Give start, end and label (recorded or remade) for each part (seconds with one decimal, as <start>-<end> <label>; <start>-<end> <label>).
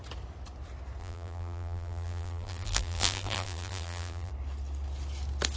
0.0-1.0 recorded; 1.0-4.3 remade; 4.3-5.6 recorded